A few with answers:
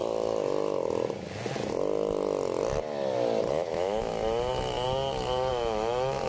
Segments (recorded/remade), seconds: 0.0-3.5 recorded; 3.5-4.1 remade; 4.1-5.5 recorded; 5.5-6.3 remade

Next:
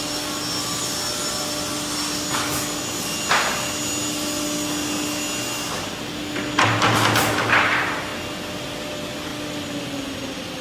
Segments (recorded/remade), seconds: 0.0-10.6 recorded

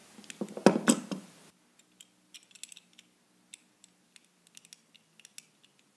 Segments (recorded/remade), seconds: 0.0-6.0 recorded

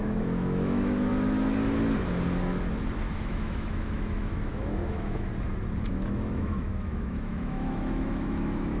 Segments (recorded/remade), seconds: 0.0-1.1 remade; 1.1-3.0 recorded; 3.0-5.3 remade; 5.3-5.9 recorded; 5.9-8.8 remade

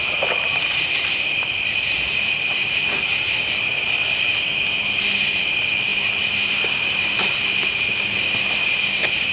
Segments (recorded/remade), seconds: 0.0-9.3 recorded

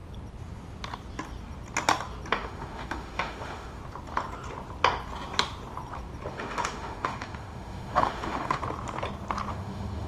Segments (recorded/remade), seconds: 0.0-2.3 recorded; 2.3-3.8 remade; 3.8-6.3 recorded; 6.3-8.6 remade; 8.6-9.5 recorded; 9.5-10.1 remade

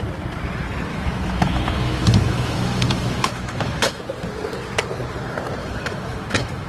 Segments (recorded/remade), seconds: 0.0-0.9 recorded; 0.9-4.0 remade; 4.0-5.6 recorded; 5.6-6.7 remade